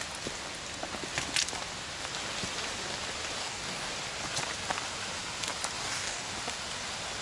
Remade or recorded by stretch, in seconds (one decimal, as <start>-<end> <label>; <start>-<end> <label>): 0.0-3.4 recorded; 3.4-3.9 remade; 3.9-5.8 recorded; 5.8-6.3 remade; 6.3-7.2 recorded